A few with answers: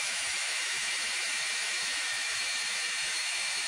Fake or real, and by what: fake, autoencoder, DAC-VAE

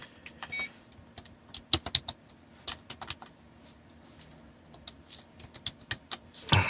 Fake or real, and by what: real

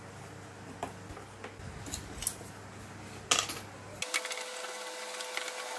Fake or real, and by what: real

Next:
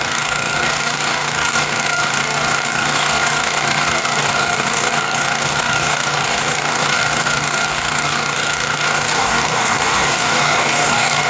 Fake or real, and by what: fake, codec, DAC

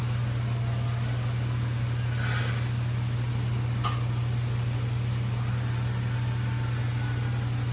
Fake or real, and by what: real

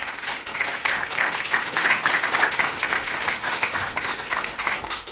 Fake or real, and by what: fake, autoencoder, DAC-VAE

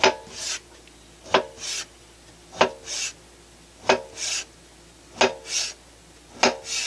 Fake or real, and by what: real